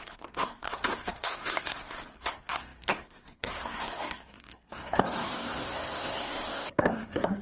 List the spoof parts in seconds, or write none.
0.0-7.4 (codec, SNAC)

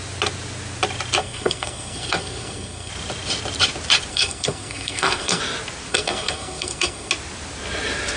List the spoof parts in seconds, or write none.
1.2-2.9 (codec, SNAC); 4.1-5.4; 5.9-7.1